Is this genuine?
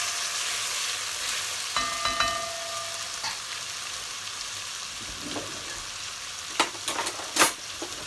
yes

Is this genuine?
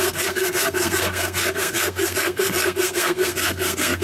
no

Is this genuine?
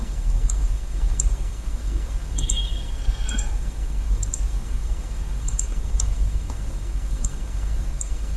no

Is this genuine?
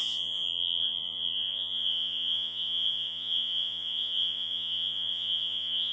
no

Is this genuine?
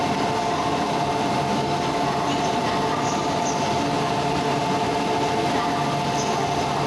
yes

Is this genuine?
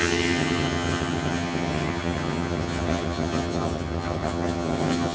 no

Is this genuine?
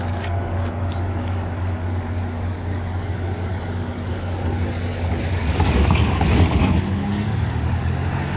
no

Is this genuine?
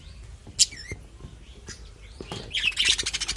yes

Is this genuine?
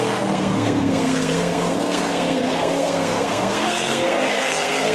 no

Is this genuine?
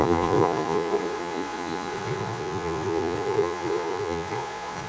no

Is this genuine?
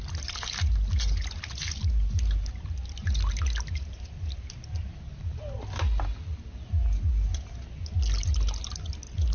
yes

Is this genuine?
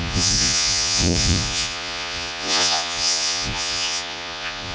no